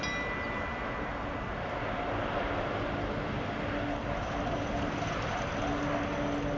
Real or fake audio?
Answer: real